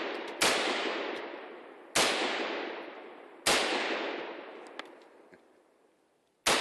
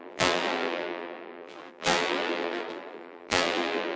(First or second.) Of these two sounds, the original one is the first